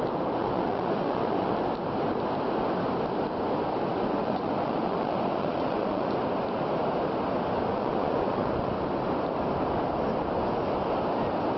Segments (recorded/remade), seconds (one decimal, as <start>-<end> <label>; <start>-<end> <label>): 0.0-0.4 recorded; 0.4-1.6 remade; 1.6-3.9 recorded; 3.9-6.2 remade; 6.2-7.7 recorded; 7.7-8.7 remade; 8.7-11.6 recorded